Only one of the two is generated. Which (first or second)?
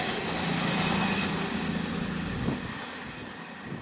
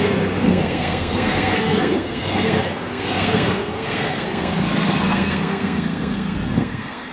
second